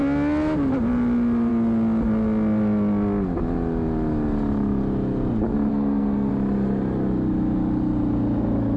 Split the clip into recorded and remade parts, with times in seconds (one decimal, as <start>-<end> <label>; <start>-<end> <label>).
0.0-5.7 recorded; 5.7-6.3 remade; 6.3-8.8 recorded